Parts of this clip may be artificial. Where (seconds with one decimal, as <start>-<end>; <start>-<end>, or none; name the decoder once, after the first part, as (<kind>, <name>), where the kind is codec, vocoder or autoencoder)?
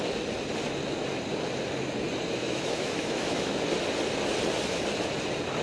2.4-3.6 (autoencoder, DAC-VAE)